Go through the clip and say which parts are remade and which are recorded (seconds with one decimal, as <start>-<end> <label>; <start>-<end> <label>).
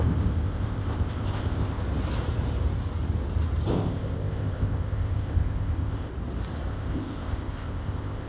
0.0-1.8 remade; 1.8-3.7 recorded; 3.7-6.1 remade; 6.1-6.7 recorded; 6.7-8.3 remade